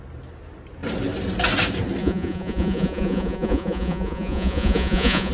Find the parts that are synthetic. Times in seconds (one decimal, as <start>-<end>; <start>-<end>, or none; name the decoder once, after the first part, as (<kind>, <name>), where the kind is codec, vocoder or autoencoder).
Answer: 2.0-5.3 (vocoder, Vocos)

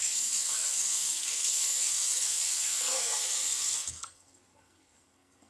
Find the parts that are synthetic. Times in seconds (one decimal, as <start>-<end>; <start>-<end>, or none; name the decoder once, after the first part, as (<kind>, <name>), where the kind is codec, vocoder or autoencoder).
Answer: 0.0-5.5 (codec, SNAC)

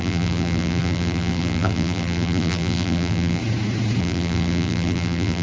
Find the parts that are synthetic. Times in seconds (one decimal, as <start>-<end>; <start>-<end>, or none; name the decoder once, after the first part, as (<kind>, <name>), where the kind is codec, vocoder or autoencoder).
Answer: 0.0-3.4 (vocoder, BigVGAN v2); 4.0-5.4

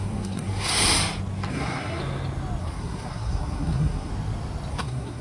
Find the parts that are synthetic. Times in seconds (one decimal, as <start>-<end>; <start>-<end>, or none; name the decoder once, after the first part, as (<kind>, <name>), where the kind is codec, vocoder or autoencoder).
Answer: 0.0-0.7 (codec, SNAC); 1.5-2.0; 2.6-4.1; 4.7-5.2